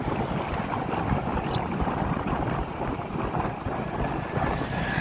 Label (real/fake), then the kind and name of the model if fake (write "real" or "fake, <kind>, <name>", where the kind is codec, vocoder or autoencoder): real